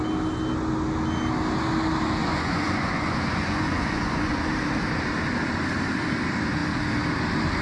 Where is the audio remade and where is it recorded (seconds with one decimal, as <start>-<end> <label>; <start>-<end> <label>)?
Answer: 0.0-2.2 recorded; 2.2-4.4 remade; 4.4-7.6 recorded